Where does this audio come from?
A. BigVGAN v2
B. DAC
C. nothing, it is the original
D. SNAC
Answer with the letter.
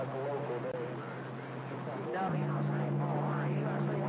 C